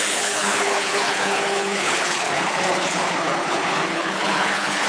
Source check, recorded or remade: remade